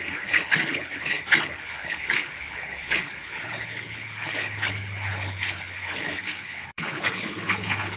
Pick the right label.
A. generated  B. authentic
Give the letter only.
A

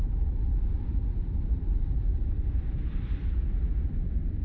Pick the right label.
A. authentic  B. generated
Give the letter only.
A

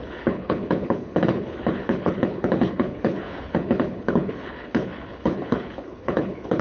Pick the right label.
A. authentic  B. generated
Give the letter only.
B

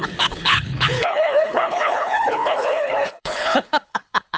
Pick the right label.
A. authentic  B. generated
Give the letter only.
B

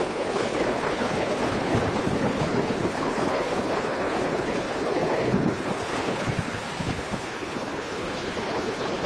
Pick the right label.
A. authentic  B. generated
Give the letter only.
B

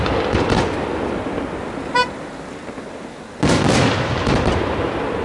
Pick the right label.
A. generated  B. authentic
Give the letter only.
B